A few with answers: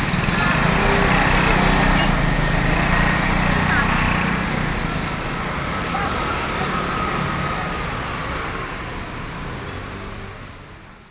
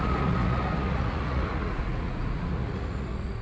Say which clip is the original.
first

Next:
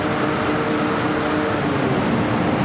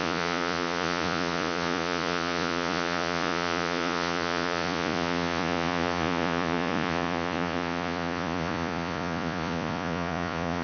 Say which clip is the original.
first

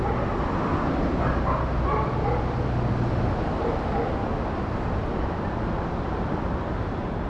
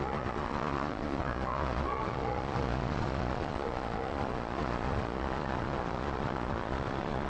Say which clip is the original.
first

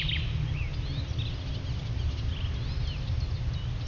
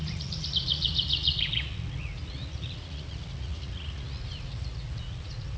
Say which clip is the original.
first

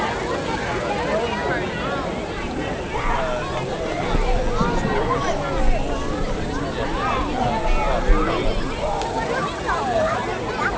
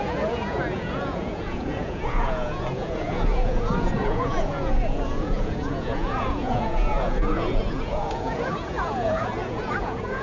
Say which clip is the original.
first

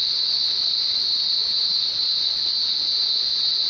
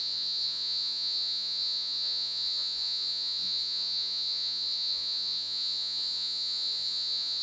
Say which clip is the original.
first